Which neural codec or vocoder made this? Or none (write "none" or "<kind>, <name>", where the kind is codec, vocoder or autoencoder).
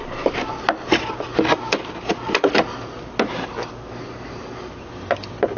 none